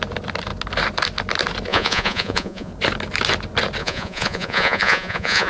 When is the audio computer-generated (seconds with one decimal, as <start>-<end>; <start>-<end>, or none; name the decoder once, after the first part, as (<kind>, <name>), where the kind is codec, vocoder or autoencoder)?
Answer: 1.7-2.7 (vocoder, Vocos); 3.8-5.5